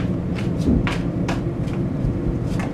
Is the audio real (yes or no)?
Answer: no